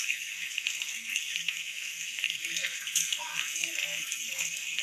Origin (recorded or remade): remade